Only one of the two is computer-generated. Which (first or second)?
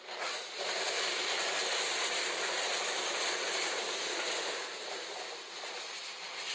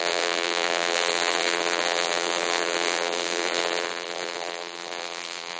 second